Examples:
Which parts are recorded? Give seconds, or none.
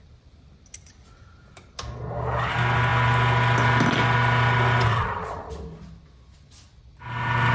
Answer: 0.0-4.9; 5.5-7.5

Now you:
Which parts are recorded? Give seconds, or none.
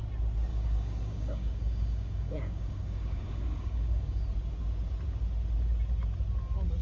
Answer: 0.0-0.5; 4.2-6.8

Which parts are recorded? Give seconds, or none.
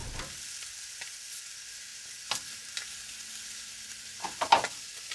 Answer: 0.0-5.1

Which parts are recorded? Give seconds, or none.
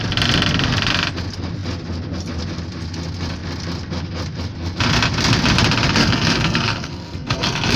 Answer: 0.0-6.0